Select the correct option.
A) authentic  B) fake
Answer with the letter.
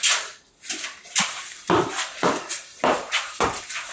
A